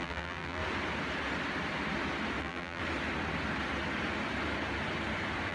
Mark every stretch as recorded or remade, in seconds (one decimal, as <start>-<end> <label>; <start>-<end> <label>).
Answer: 0.0-0.6 remade; 0.6-2.4 recorded; 2.4-2.8 remade; 2.8-5.5 recorded